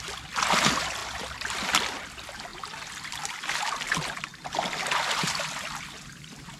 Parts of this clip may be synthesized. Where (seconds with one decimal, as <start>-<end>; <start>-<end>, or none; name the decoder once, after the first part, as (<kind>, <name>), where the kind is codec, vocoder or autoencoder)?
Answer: 1.0-2.1 (vocoder, BigVGAN v2); 2.5-3.1; 4.3-4.9